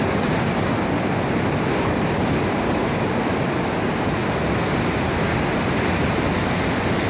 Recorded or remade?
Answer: recorded